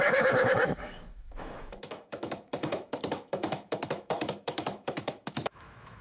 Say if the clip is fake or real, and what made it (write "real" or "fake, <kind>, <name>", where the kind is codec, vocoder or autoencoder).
fake, autoencoder, DAC-VAE